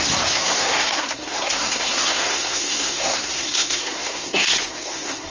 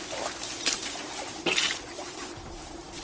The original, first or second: second